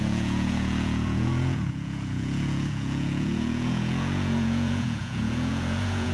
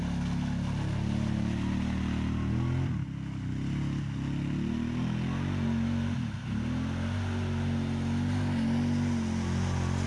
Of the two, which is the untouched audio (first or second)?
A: second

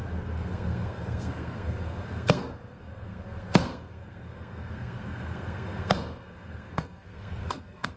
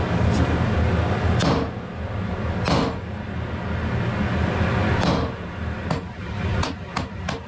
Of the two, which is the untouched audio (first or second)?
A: second